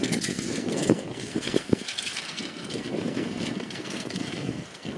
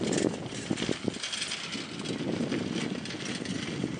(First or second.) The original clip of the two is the second